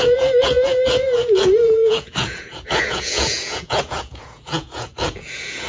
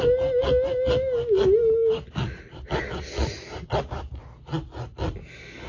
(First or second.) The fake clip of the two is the first